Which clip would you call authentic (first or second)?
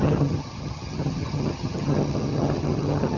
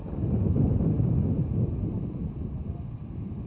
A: second